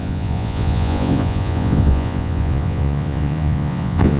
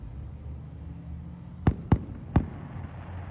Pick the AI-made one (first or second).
first